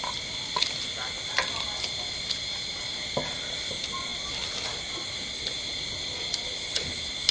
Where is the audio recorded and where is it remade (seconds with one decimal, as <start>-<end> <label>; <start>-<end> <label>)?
0.0-7.3 recorded